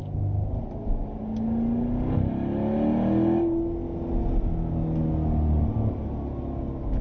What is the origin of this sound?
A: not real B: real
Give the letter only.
B